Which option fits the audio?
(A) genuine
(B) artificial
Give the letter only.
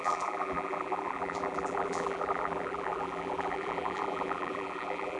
B